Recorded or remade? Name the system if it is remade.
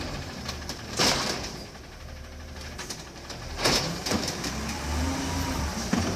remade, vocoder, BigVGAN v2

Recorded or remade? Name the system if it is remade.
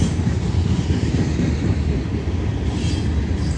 recorded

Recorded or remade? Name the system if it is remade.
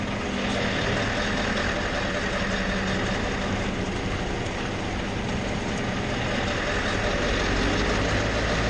recorded